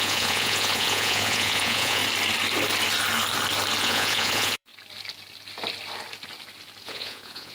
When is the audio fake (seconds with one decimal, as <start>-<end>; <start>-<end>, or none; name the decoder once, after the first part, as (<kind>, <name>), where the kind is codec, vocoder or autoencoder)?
0.0-2.0 (vocoder, Vocos); 3.8-4.7; 6.8-7.5